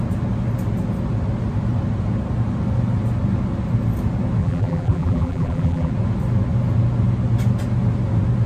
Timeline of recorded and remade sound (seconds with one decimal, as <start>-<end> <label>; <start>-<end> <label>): 0.0-4.4 recorded; 4.4-5.9 remade; 5.9-8.5 recorded